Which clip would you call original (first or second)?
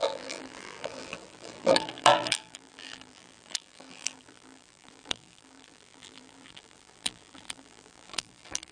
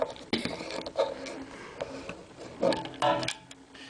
second